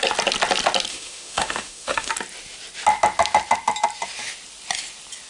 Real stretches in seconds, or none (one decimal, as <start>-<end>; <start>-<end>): 0.0-0.9; 2.1-5.3